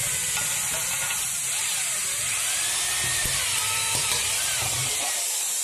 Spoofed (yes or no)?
no